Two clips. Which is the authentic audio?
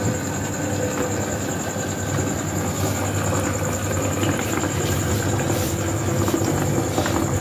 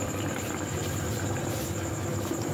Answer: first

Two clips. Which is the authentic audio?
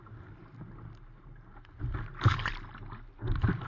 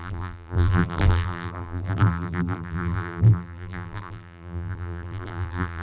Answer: first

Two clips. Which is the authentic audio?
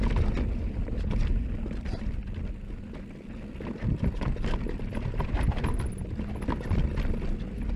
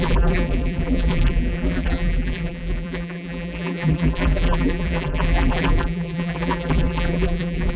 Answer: first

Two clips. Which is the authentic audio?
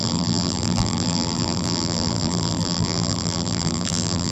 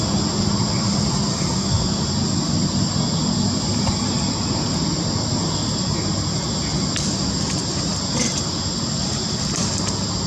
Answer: second